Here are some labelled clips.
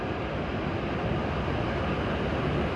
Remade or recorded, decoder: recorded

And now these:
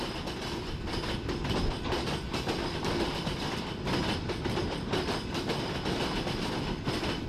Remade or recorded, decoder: recorded